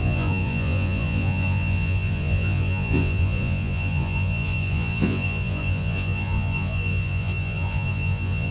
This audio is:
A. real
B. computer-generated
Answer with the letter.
B